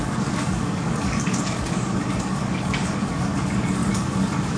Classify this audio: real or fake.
fake